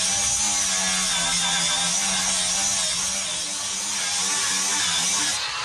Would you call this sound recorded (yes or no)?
yes